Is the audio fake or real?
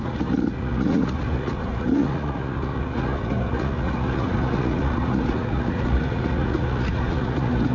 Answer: fake